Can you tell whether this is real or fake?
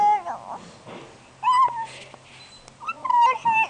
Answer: real